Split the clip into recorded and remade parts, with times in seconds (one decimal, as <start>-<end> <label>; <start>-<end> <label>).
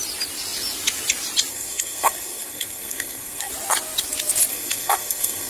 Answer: 0.0-1.5 recorded; 1.5-3.5 remade; 3.5-4.5 recorded; 4.5-5.5 remade